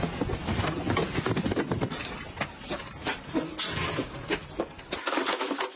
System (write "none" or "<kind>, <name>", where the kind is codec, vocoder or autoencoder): none